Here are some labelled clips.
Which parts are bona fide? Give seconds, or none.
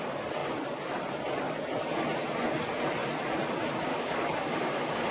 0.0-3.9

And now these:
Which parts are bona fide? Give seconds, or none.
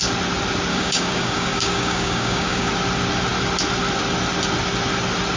0.0-0.7; 2.7-5.4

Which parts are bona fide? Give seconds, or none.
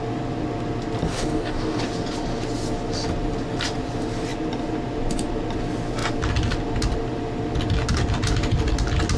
0.0-1.1; 1.8-9.2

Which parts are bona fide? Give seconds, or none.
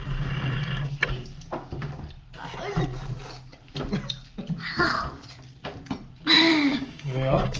0.0-6.5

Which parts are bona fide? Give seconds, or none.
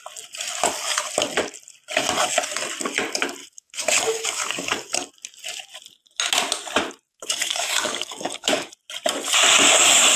0.0-3.4; 5.1-7.1; 8.7-10.2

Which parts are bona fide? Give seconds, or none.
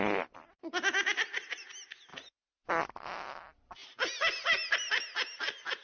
0.0-5.8